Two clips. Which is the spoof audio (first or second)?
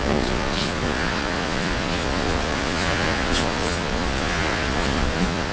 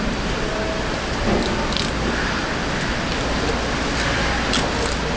first